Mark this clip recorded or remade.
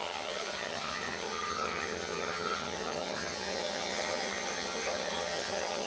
remade